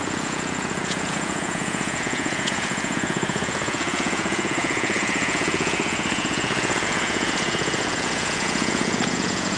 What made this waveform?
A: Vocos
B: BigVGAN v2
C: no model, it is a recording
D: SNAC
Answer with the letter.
A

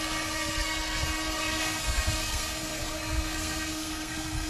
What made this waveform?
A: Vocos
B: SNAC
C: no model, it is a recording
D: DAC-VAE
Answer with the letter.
B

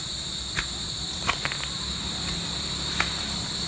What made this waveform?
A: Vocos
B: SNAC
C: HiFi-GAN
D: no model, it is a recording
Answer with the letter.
D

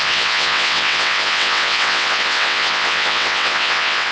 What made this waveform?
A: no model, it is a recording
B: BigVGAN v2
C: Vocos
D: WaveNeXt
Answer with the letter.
D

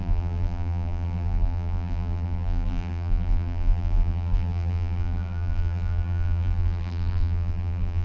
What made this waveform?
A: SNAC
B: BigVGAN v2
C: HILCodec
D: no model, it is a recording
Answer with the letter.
B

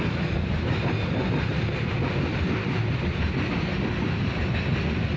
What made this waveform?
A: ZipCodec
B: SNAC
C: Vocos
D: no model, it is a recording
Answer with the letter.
D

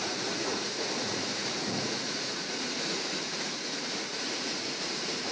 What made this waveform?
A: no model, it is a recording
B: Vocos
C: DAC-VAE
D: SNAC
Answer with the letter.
B